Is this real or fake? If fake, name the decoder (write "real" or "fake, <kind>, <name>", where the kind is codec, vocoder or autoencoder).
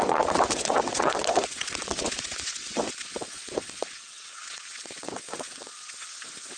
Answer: fake, vocoder, WaveNeXt